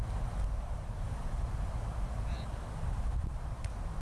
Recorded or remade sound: remade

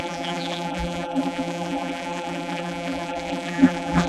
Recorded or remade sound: remade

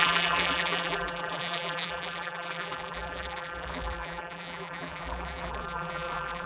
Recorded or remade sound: remade